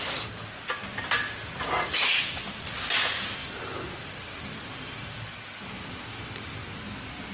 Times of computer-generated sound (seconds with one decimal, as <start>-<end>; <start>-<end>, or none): 3.4-6.2